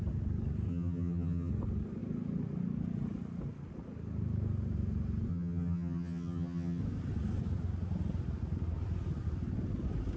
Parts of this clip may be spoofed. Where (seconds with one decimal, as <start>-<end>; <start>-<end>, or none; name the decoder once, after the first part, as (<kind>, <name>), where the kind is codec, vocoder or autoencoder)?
0.7-1.5 (vocoder, HiFi-GAN); 5.3-6.8